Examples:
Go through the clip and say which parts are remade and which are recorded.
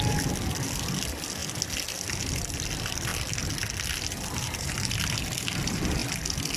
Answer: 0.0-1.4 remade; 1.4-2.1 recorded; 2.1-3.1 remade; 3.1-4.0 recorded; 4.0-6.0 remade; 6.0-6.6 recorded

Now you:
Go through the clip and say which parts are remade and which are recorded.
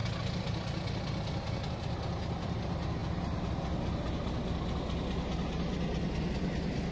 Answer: 0.0-1.6 recorded; 1.6-3.0 remade; 3.0-6.2 recorded; 6.2-6.9 remade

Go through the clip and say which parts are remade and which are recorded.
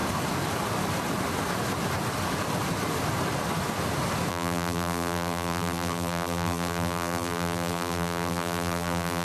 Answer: 0.0-4.3 recorded; 4.3-9.2 remade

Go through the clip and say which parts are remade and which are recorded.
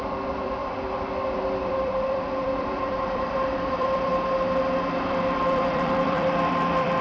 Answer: 0.0-4.1 remade; 4.1-4.9 recorded; 4.9-7.0 remade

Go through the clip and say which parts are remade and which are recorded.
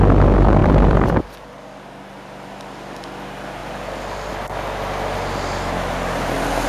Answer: 0.0-0.6 recorded; 0.6-1.2 remade; 1.2-3.6 recorded; 3.6-4.3 remade; 4.3-6.7 recorded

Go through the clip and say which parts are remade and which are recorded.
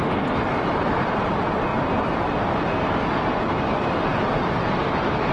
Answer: 0.0-5.3 remade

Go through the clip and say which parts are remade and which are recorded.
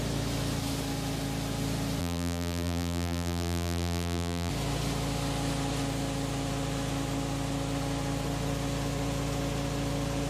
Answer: 0.0-2.0 recorded; 2.0-4.5 remade; 4.5-10.3 recorded